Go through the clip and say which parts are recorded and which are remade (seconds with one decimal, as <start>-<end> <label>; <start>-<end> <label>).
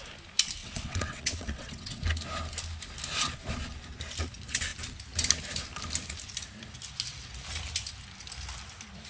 0.0-0.6 recorded; 0.6-2.0 remade; 2.0-9.1 recorded